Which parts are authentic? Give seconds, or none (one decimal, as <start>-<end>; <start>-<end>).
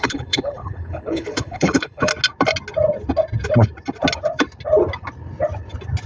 2.1-6.1